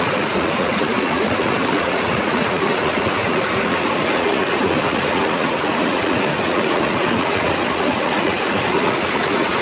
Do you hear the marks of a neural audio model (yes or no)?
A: yes